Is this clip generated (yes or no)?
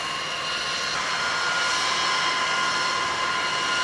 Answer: no